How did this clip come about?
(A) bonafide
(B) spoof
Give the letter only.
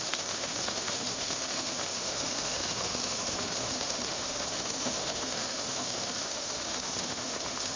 B